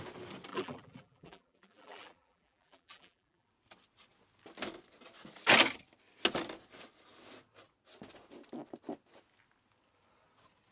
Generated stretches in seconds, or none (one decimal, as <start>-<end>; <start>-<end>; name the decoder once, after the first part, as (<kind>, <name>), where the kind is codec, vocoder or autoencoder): 0.5-3.5 (vocoder, BigVGAN v2)